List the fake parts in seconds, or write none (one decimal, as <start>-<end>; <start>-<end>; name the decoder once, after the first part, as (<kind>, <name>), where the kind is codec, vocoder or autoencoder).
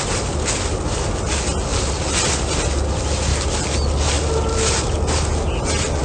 none